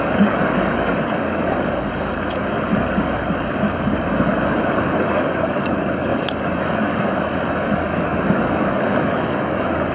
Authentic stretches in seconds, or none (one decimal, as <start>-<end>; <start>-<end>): none